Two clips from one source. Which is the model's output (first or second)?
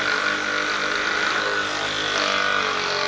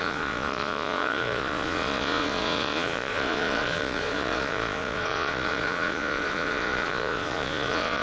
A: second